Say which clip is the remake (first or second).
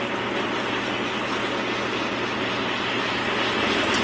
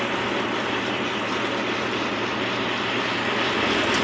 second